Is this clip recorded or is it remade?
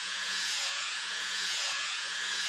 remade